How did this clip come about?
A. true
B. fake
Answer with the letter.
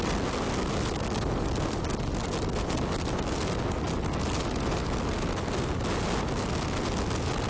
A